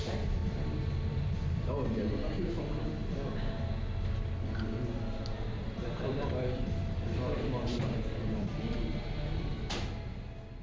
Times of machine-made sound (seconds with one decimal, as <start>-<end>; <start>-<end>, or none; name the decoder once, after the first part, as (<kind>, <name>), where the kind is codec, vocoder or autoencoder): 0.0-0.4 (vocoder, BigVGAN v2); 0.9-3.0; 5.6-10.6